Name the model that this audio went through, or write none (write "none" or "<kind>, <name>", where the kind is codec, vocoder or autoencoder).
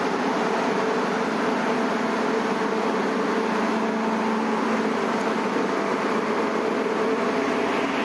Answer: none